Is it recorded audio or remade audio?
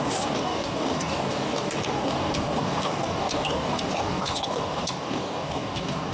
remade